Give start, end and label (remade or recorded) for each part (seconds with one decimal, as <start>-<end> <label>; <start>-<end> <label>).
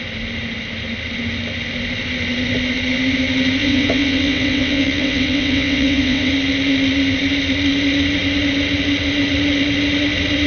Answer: 0.0-3.6 recorded; 3.6-6.3 remade; 6.3-10.5 recorded